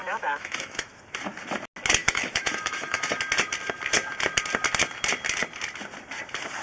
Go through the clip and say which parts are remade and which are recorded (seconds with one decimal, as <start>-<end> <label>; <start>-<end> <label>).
0.0-0.9 remade; 0.9-2.0 recorded; 2.0-3.2 remade; 3.2-6.6 recorded